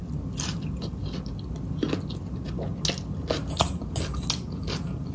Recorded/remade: recorded